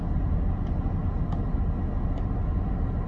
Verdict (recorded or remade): recorded